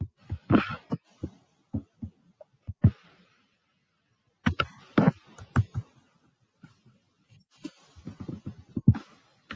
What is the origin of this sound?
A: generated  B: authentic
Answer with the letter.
B